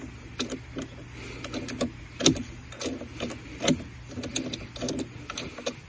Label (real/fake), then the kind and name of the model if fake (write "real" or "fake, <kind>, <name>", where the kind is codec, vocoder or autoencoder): real